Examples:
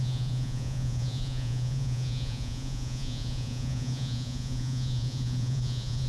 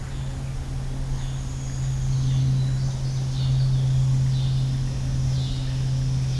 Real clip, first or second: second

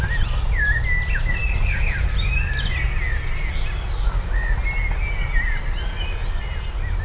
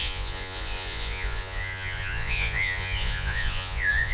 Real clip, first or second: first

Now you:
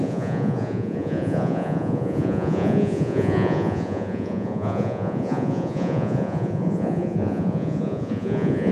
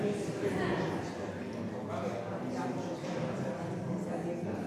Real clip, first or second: second